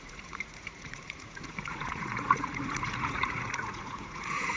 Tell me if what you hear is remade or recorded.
remade